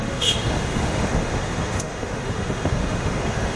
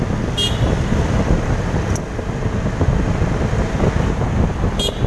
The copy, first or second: first